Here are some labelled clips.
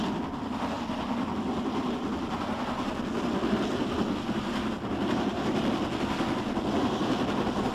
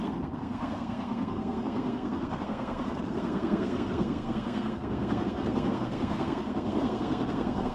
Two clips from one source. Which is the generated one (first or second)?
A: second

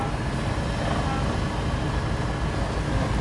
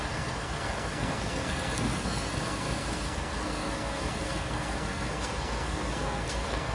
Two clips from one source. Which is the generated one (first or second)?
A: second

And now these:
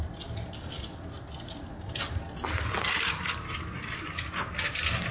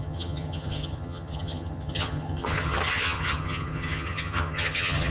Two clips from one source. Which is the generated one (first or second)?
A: second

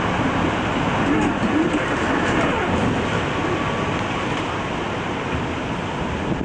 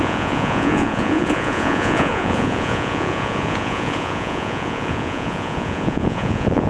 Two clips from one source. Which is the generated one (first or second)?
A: second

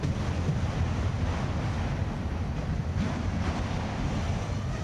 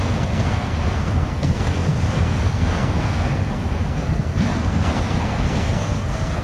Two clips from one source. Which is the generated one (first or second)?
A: second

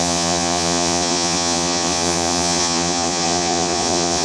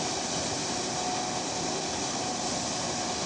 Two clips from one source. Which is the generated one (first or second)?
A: first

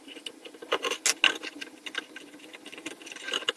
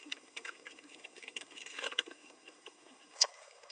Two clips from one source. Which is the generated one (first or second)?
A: second